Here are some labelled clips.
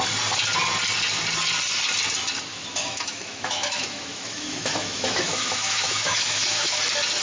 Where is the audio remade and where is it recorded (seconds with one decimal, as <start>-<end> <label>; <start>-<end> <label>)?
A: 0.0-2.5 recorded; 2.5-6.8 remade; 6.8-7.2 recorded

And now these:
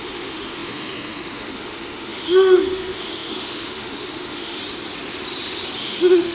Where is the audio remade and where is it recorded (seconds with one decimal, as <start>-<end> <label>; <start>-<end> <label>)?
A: 0.0-4.6 remade; 4.6-5.8 recorded; 5.8-6.3 remade

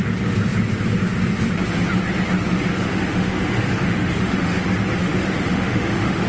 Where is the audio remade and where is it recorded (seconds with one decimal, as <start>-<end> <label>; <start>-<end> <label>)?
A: 0.0-2.7 recorded; 2.7-4.6 remade; 4.6-5.0 recorded; 5.0-6.3 remade

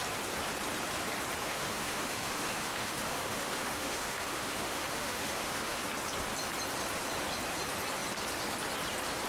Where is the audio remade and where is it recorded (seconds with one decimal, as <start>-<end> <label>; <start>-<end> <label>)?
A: 0.0-1.4 recorded; 1.4-5.8 remade; 5.8-9.3 recorded

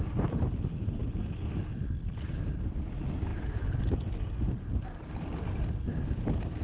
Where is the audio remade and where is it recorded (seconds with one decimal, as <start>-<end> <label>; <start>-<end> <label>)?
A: 0.0-6.6 recorded

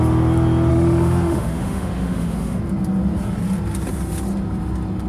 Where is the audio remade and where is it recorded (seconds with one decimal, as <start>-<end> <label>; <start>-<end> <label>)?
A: 0.0-0.7 recorded; 0.7-2.6 remade; 2.6-5.1 recorded

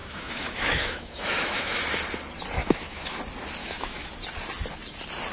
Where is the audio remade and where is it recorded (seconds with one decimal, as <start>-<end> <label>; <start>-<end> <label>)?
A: 0.0-1.8 remade; 1.8-2.6 recorded; 2.6-3.2 remade; 3.2-3.6 recorded; 3.6-4.1 remade; 4.1-5.3 recorded

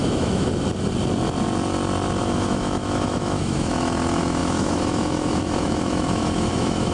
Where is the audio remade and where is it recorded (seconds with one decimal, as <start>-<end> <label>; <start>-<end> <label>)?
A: 0.0-0.5 remade; 0.5-2.2 recorded; 2.2-6.9 remade